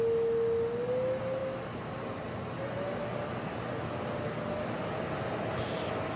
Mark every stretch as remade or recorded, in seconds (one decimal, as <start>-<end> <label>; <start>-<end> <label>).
0.0-6.2 recorded